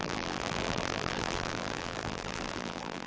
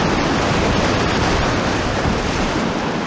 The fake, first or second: first